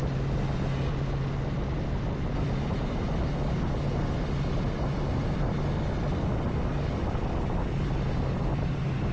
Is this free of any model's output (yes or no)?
yes